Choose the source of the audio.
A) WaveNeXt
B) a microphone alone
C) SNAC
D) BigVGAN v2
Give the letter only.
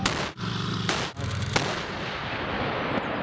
B